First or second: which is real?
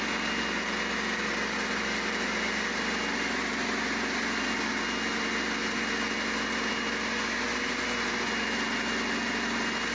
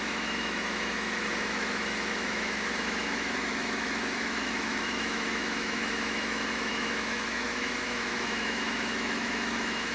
first